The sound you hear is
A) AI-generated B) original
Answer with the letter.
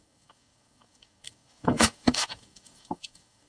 A